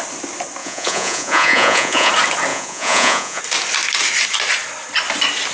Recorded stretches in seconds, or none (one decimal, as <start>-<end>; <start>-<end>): 0.0-0.6; 2.1-2.5; 3.4-5.5